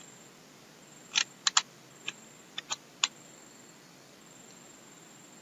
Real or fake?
real